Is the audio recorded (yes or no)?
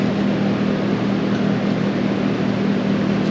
yes